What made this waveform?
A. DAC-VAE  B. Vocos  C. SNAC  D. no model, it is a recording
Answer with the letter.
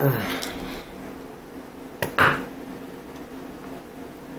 D